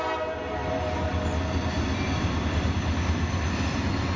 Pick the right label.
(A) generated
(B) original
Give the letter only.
B